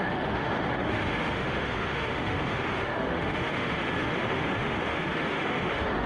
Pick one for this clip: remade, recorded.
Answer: remade